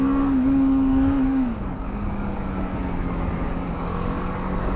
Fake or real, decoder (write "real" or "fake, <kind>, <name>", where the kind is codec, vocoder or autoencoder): fake, codec, DAC